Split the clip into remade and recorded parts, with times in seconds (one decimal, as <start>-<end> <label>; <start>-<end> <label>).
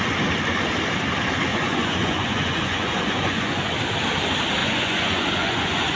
0.0-1.5 recorded; 1.5-3.7 remade; 3.7-4.6 recorded; 4.6-6.0 remade